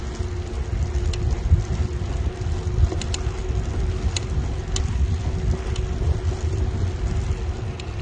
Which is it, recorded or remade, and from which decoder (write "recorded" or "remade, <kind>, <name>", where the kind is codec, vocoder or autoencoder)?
recorded